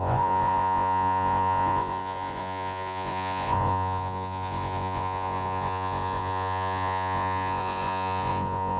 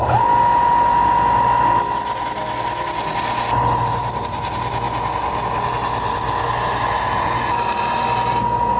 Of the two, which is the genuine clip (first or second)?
second